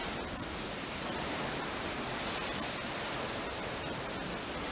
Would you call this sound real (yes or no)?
yes